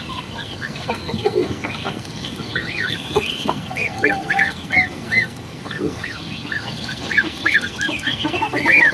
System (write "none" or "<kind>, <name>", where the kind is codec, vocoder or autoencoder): codec, SNAC